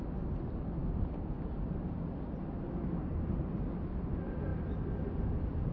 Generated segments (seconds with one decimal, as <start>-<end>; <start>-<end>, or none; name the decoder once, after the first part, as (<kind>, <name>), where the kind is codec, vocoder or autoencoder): none

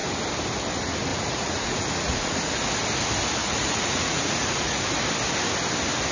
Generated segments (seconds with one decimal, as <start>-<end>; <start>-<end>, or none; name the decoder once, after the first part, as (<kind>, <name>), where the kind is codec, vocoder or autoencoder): 1.1-2.5 (vocoder, Vocos); 3.4-4.8

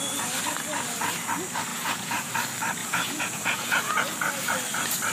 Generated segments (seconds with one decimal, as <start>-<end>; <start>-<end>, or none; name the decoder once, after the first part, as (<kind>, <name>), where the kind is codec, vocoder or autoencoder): 1.7-2.3 (vocoder, Vocos); 2.8-4.0

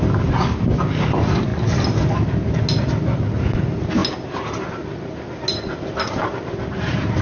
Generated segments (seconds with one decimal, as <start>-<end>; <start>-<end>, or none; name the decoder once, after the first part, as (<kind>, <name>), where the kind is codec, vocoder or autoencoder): none

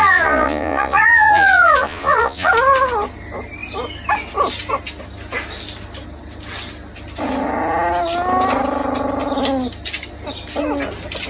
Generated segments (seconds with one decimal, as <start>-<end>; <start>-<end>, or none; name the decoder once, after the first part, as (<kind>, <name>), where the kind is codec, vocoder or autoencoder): 0.0-2.5 (vocoder, Vocos)

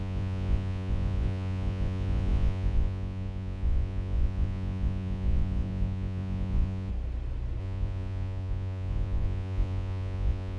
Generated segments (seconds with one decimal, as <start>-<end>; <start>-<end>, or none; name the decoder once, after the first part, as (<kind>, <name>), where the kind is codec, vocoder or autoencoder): 0.0-6.9 (vocoder, Vocos); 7.6-10.6

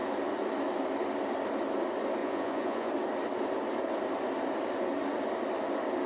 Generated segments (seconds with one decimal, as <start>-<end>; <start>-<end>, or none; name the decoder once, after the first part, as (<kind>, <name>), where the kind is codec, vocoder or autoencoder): 2.2-2.9 (vocoder, Vocos)